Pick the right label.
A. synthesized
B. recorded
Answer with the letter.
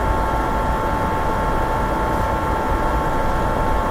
B